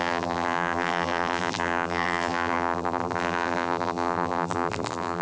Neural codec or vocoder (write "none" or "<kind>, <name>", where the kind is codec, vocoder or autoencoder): vocoder, BigVGAN v2